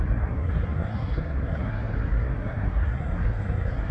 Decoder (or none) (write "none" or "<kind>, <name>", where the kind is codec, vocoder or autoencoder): codec, SNAC